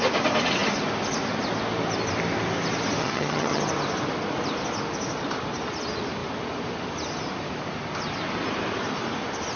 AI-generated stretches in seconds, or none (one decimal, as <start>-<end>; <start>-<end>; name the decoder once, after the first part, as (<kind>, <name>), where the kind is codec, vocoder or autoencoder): 3.0-3.6 (vocoder, HiFi-GAN)